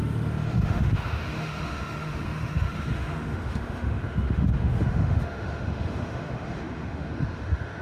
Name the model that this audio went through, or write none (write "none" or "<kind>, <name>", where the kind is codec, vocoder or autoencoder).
autoencoder, DAC-VAE